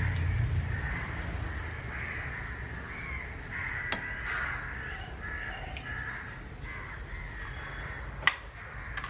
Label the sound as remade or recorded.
recorded